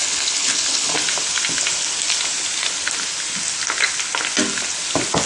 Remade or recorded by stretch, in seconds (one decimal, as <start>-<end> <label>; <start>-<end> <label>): 0.0-0.9 remade; 0.9-5.3 recorded